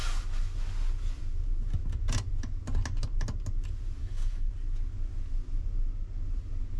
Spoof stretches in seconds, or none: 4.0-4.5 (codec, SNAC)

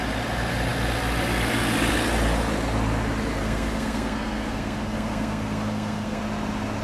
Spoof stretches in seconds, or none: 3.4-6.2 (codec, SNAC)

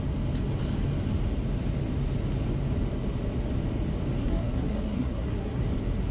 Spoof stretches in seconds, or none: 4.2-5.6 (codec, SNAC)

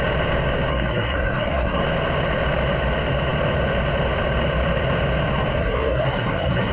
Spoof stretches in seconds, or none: 0.7-1.8 (codec, SNAC); 5.6-6.7

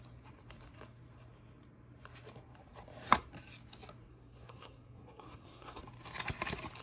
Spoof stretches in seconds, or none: 4.1-5.8 (codec, SNAC)

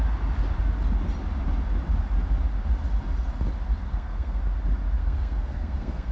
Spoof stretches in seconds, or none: 3.9-4.4 (codec, SNAC); 5.0-6.1

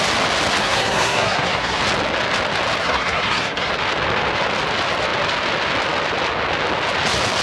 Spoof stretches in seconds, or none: 0.6-1.8 (codec, SNAC); 2.8-3.7

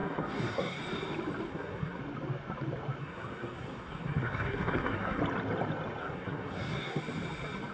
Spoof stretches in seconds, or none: 0.0-0.8 (codec, SNAC); 1.5-2.0; 3.0-5.2; 6.0-7.0